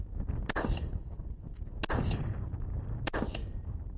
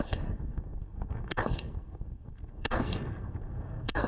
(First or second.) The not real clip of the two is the second